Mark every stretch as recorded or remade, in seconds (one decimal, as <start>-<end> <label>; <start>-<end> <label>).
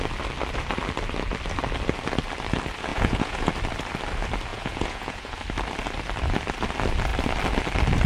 0.0-2.9 recorded; 2.9-3.5 remade; 3.5-4.5 recorded; 4.5-5.3 remade; 5.3-8.1 recorded